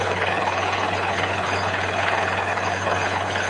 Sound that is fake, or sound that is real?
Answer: fake